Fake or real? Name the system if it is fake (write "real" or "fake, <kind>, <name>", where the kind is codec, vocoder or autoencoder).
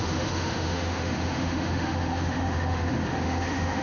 fake, autoencoder, DAC-VAE